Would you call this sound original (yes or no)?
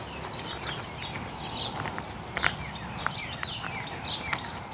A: yes